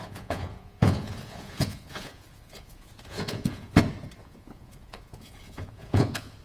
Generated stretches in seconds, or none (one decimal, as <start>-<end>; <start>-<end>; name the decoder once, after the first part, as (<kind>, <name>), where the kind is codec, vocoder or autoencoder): 0.0-3.8 (vocoder, Vocos); 4.2-6.4